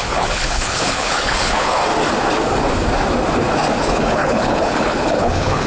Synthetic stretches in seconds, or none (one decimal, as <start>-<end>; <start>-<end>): 0.0-1.8; 3.8-5.7